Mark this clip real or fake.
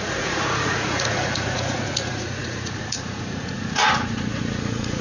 fake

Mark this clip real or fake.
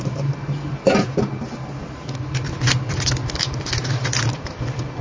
real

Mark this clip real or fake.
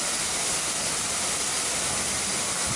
real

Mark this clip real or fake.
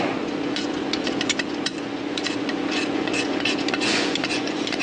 fake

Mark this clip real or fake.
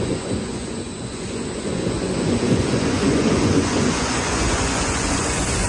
fake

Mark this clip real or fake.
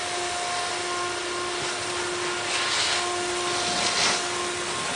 real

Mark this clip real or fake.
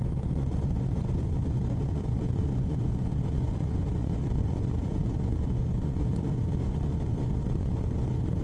fake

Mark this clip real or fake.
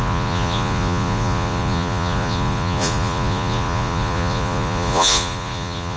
fake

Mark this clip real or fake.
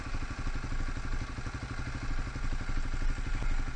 real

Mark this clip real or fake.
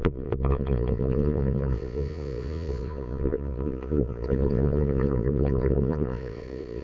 fake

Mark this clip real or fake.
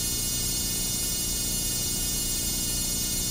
fake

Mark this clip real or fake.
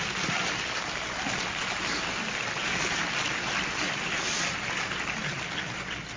real